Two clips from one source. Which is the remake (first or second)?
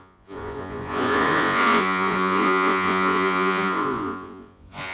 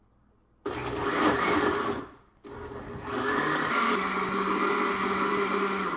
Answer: first